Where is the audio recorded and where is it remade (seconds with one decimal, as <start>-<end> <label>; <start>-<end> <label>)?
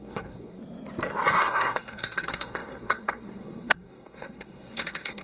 0.0-0.6 remade; 0.6-1.3 recorded; 1.3-5.2 remade